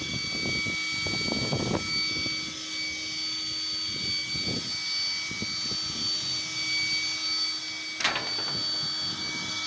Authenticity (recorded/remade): recorded